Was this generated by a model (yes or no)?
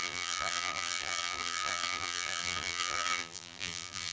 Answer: yes